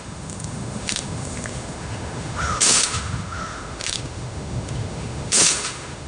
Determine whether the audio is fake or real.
fake